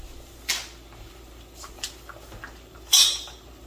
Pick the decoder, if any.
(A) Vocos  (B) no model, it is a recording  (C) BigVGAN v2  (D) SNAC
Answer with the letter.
B